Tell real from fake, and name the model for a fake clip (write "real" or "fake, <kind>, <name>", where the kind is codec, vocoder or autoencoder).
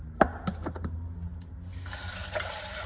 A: real